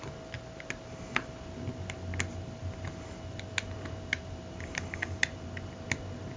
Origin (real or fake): real